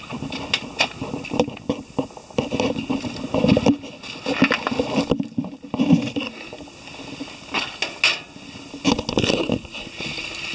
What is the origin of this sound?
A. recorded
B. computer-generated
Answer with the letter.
A